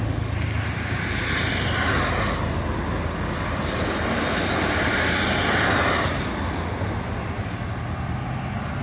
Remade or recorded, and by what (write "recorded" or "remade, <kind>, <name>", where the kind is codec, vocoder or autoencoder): recorded